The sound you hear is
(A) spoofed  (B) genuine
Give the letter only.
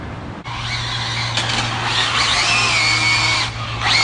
B